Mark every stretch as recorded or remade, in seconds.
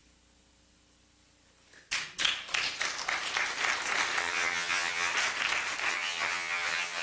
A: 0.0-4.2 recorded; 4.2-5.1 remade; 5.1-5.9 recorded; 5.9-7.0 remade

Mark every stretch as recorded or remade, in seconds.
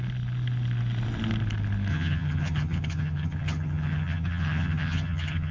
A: 0.0-1.9 recorded; 1.9-5.5 remade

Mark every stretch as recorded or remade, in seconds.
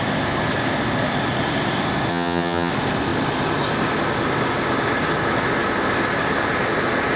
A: 0.0-2.1 recorded; 2.1-2.7 remade; 2.7-7.2 recorded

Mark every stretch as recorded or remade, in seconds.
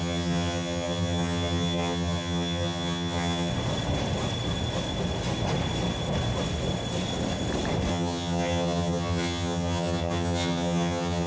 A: 0.0-3.5 remade; 3.5-7.9 recorded; 7.9-11.3 remade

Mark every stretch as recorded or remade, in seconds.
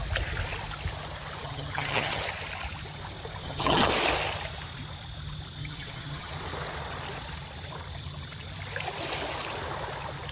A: 0.0-1.4 recorded; 1.4-2.2 remade; 2.2-3.4 recorded; 3.4-3.9 remade; 3.9-5.6 recorded; 5.6-6.3 remade; 6.3-10.3 recorded